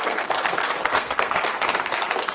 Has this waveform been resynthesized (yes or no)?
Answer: yes